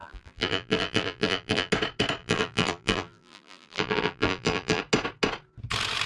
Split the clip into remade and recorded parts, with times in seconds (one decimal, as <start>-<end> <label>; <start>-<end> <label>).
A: 0.0-1.7 remade; 1.7-2.2 recorded; 2.2-4.8 remade; 4.8-6.1 recorded